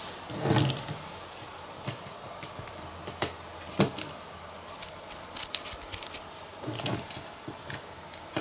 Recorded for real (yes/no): yes